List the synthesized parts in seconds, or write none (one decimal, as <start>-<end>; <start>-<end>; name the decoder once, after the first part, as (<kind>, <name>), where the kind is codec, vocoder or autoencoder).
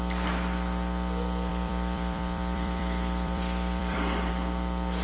1.5-4.3 (vocoder, BigVGAN v2)